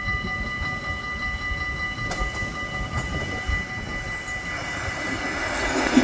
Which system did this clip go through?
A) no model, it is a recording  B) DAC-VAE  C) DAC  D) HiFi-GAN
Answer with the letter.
A